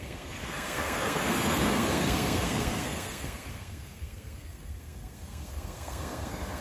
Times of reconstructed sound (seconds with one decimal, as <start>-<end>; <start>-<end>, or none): 0.0-6.6